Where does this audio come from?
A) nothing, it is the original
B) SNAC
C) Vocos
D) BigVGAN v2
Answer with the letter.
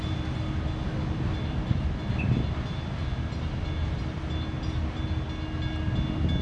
A